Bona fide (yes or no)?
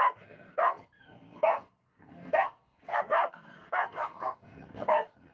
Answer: no